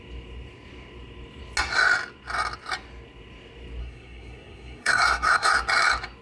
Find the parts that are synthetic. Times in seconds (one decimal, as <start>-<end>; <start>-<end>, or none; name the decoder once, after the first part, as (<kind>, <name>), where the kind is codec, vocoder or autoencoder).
3.8-5.5 (codec, SNAC)